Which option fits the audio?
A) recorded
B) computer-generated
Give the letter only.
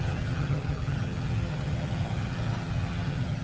B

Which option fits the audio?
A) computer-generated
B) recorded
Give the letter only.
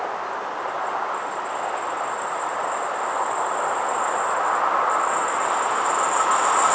B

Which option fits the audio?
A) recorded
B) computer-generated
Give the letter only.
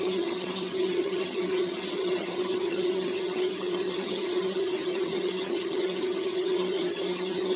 B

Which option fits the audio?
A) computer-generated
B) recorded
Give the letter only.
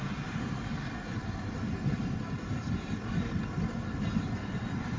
B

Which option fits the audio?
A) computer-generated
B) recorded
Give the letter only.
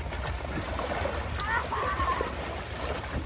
B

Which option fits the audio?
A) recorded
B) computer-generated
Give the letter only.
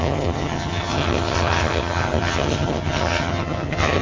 B